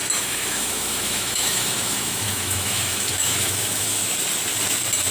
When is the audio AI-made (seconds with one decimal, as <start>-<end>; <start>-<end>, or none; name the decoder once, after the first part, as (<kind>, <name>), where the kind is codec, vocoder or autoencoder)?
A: 0.0-4.0 (autoencoder, DAC-VAE)